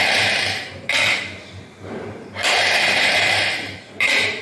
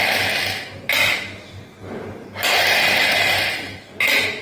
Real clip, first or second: second